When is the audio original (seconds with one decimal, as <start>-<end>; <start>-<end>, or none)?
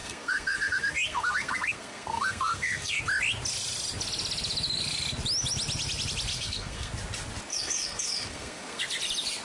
3.0-6.3; 6.9-7.5; 8.8-9.4